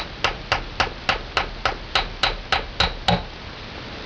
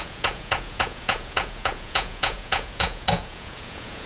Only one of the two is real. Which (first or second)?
first